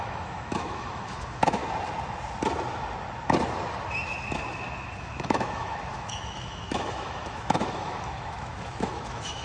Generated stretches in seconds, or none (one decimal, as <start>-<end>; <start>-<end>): 0.0-1.6; 5.0-9.4